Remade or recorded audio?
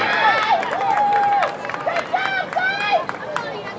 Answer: recorded